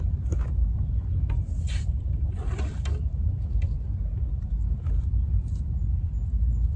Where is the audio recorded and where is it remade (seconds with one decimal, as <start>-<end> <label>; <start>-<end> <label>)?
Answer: 0.0-6.8 recorded